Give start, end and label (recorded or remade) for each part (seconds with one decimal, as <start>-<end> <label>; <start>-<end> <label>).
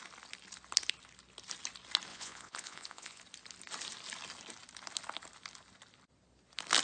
0.0-2.1 recorded; 2.1-3.2 remade; 3.2-6.8 recorded